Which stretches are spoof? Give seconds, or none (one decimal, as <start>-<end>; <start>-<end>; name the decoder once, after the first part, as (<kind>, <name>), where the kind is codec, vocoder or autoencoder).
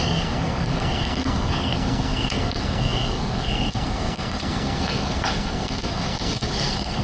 0.0-7.0 (codec, SNAC)